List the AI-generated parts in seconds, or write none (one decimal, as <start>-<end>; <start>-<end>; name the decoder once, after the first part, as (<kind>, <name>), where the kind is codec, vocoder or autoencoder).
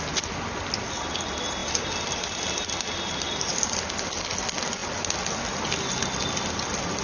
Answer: none